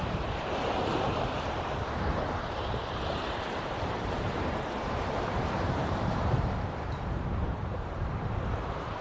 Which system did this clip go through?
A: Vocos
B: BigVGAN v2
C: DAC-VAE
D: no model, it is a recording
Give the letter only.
B